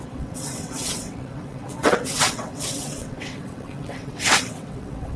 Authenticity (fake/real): fake